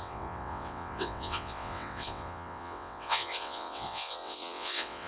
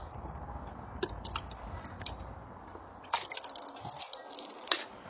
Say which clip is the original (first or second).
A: second